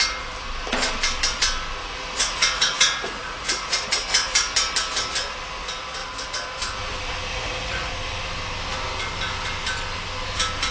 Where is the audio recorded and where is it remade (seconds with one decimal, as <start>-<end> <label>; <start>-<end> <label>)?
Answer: 0.0-1.8 recorded; 1.8-3.9 remade; 3.9-7.3 recorded; 7.3-7.9 remade; 7.9-10.7 recorded